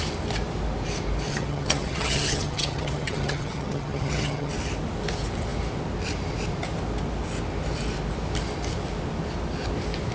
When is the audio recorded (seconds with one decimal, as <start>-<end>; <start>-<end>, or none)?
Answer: 0.0-1.3; 4.5-10.1